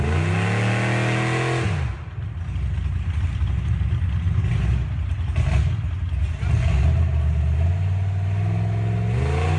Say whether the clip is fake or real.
real